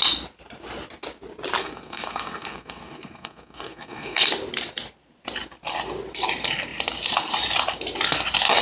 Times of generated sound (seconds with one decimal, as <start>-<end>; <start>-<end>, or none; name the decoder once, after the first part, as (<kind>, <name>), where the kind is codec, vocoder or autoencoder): 1.6-4.3 (codec, SNAC)